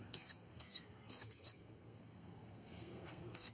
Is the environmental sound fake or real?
fake